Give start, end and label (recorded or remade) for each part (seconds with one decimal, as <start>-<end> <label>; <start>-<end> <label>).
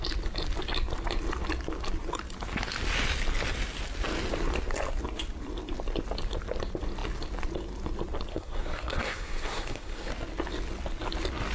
0.0-8.3 recorded; 8.3-10.1 remade; 10.1-11.5 recorded